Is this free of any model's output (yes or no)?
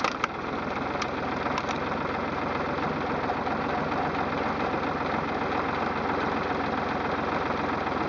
yes